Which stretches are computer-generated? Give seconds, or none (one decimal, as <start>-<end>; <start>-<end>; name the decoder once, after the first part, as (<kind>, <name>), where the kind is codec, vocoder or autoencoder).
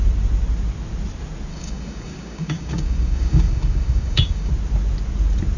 1.5-4.5 (codec, DAC)